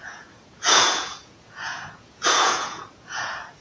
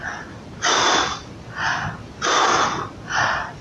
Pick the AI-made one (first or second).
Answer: first